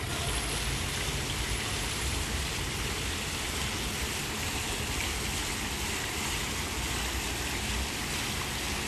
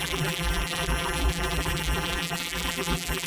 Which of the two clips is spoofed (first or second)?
second